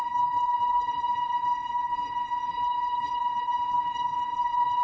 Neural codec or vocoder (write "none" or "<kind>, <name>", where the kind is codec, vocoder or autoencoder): codec, HILCodec